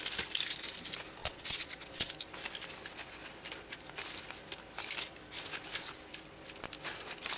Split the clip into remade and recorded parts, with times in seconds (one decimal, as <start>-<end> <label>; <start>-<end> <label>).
0.0-1.2 recorded; 1.2-2.1 remade; 2.1-7.4 recorded